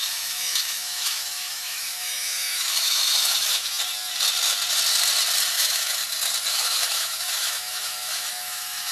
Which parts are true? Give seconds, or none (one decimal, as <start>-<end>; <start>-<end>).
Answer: 3.7-5.5; 6.0-6.5